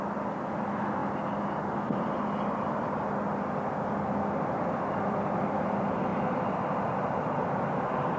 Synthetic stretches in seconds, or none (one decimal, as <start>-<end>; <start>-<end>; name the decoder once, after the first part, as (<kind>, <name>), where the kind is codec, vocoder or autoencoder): none